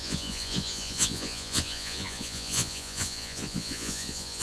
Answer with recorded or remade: remade